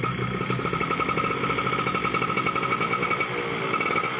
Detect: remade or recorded recorded